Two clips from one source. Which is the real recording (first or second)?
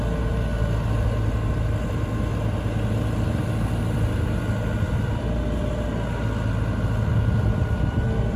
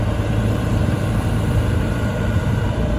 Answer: first